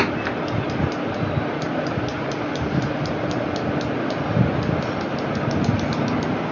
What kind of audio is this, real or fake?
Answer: real